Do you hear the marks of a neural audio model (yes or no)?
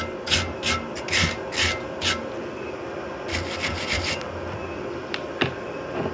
no